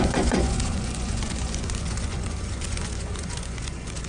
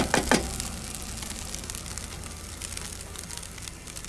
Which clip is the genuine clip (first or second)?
second